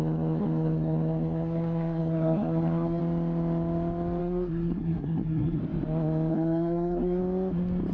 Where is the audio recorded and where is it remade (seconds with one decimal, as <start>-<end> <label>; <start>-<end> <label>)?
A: 0.0-3.0 remade; 3.0-4.2 recorded; 4.2-5.6 remade; 5.6-6.3 recorded; 6.3-7.2 remade; 7.2-7.9 recorded